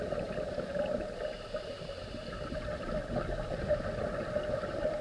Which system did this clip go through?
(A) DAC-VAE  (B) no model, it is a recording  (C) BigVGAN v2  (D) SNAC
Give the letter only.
B